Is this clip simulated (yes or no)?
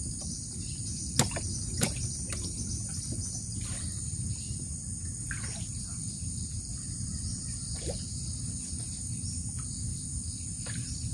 no